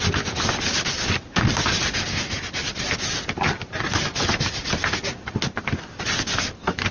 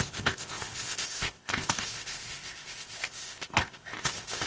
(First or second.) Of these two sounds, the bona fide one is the first